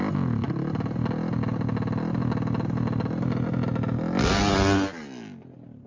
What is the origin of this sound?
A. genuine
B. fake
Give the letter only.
A